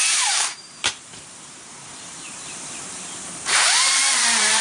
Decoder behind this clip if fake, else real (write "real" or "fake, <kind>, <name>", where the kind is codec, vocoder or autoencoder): fake, vocoder, BigVGAN v2